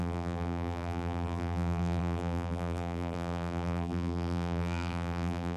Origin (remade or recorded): remade